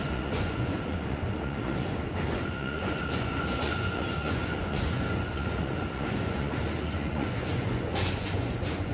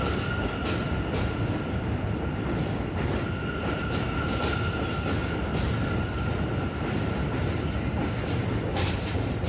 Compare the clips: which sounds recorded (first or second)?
second